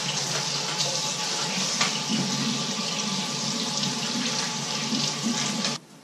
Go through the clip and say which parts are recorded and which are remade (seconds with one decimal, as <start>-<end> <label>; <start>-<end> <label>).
0.0-6.0 recorded